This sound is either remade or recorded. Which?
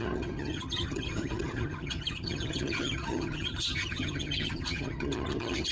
remade